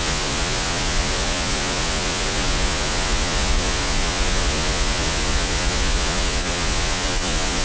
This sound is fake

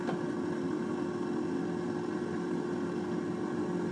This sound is real